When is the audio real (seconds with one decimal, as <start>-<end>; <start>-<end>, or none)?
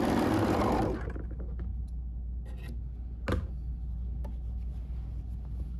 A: 0.0-5.8